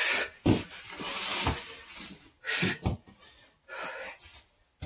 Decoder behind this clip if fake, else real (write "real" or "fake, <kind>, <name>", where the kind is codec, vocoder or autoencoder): real